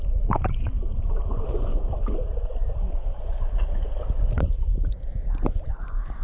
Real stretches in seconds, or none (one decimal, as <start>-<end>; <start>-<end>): 1.7-4.2